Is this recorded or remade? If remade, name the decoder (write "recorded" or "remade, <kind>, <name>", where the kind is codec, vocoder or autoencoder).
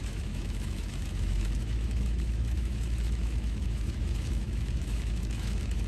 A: remade, autoencoder, DAC-VAE